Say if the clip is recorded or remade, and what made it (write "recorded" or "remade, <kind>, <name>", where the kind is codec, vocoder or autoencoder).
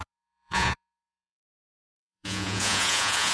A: remade, vocoder, Vocos